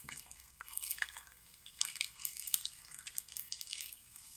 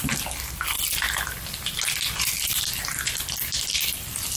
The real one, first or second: second